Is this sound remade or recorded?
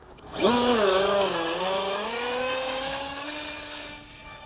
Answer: remade